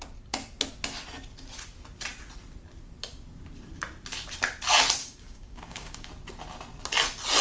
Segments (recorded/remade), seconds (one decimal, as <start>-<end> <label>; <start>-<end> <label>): 0.0-5.0 recorded; 5.0-6.1 remade; 6.1-7.4 recorded